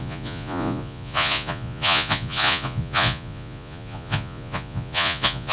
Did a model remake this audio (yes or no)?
yes